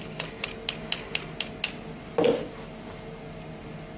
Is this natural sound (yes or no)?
yes